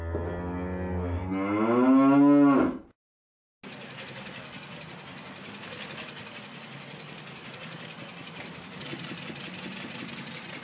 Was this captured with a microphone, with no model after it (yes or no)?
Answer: yes